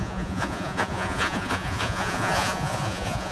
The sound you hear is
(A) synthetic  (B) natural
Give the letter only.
A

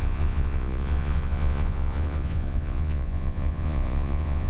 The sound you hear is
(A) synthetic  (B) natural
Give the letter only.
A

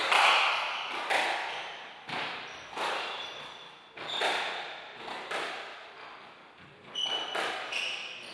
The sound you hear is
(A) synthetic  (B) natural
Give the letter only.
B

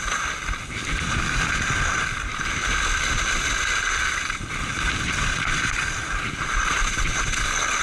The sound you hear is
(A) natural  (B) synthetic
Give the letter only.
A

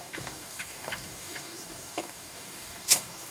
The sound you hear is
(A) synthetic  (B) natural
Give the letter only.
A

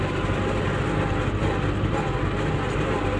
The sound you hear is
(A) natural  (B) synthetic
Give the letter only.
A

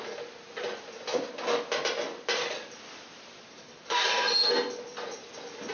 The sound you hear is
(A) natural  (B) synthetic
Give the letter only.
A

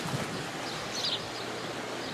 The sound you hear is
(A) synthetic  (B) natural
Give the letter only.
B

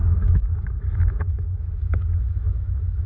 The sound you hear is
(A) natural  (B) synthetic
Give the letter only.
B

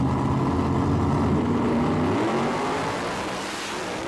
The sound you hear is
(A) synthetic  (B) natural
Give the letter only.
B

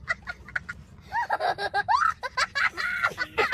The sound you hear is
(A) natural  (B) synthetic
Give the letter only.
A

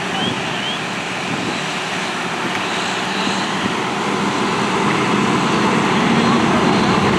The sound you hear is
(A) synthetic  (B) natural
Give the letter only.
B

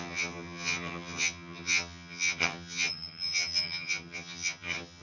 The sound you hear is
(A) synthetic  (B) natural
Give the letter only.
A